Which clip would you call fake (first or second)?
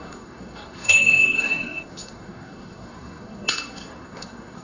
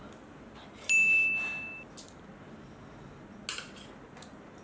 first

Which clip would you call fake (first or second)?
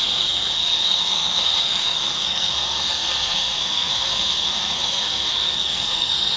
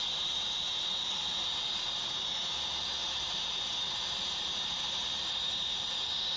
first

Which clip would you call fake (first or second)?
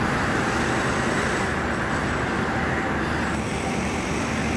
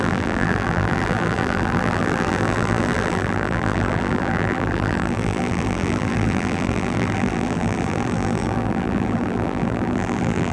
second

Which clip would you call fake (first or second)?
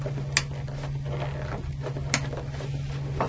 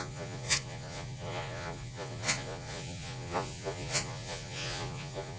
second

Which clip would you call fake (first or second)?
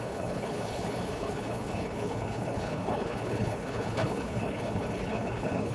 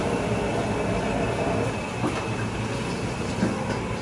first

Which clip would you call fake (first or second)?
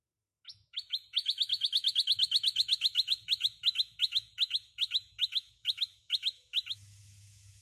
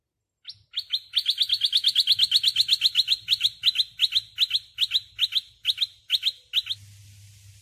first